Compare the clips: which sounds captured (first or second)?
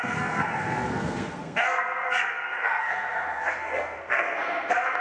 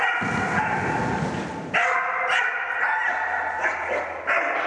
second